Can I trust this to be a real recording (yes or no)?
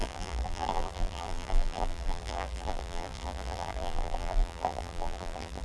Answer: no